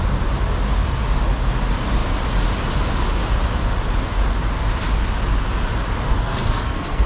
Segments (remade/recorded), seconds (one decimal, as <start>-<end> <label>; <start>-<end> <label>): 0.0-6.1 recorded; 6.1-7.1 remade